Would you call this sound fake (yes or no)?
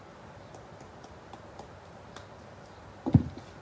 no